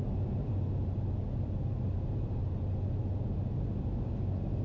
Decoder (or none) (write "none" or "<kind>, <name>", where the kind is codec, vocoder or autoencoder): none